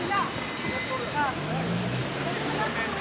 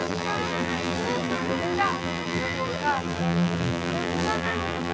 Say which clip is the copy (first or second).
second